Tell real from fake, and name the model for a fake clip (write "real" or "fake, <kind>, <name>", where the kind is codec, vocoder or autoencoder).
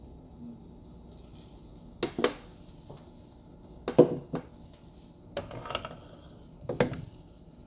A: real